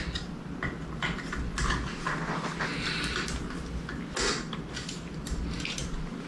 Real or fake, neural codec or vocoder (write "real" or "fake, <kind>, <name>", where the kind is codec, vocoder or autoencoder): real